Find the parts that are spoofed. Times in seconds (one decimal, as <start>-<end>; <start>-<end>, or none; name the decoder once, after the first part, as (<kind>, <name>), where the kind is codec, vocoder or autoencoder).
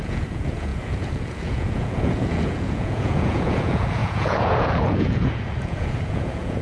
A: 0.0-6.6 (vocoder, Vocos)